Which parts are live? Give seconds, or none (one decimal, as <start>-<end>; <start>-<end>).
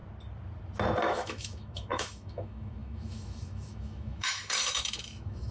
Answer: 0.0-1.0